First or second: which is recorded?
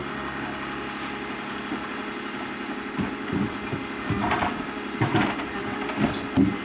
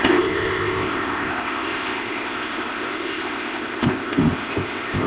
first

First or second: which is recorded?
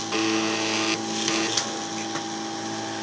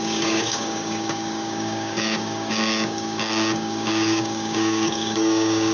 first